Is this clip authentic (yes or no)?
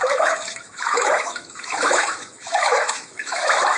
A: no